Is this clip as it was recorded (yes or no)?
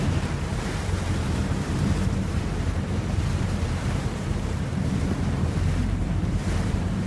no